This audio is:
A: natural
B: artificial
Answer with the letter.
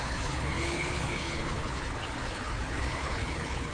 B